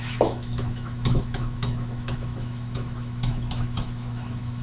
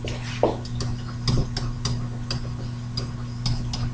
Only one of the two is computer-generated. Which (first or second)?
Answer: first